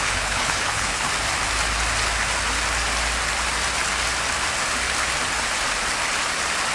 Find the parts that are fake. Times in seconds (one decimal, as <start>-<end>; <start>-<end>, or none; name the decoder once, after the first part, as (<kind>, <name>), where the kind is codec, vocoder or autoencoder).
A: 0.0-1.1 (codec, HILCodec)